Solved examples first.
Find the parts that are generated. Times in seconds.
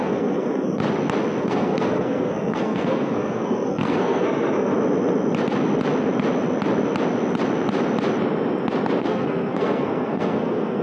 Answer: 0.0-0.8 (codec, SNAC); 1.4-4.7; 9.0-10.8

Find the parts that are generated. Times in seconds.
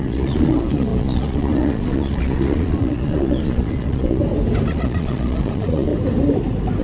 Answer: 0.0-4.2 (vocoder, Vocos); 4.7-5.9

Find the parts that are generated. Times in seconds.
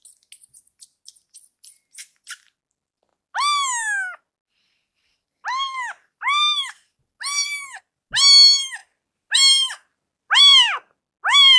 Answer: none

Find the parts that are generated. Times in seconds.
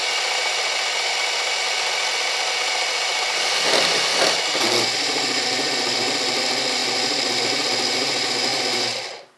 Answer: none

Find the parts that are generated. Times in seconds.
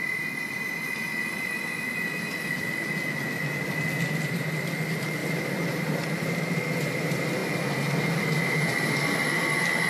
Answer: 5.2-6.6 (vocoder, BigVGAN v2)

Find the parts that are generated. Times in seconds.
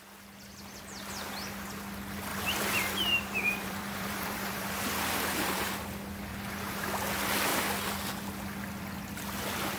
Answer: 2.3-5.7 (vocoder, BigVGAN v2)